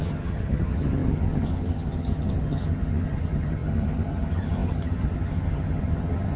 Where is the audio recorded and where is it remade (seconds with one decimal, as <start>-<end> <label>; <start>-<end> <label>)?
0.0-6.4 remade